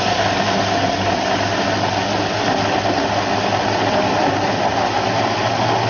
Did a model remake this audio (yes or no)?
no